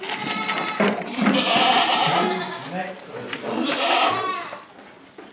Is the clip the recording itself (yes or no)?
yes